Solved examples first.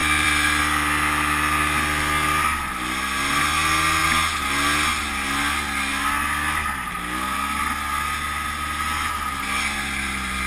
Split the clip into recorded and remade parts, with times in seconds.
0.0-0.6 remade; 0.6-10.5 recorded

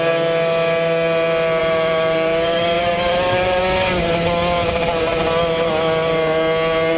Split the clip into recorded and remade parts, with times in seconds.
0.0-1.6 recorded; 1.6-3.6 remade; 3.6-7.0 recorded